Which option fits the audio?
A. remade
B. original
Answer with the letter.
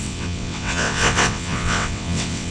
A